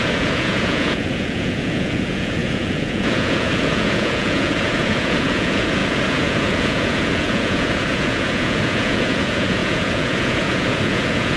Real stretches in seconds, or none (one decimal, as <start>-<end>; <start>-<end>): none